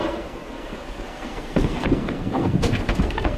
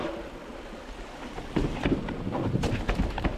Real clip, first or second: second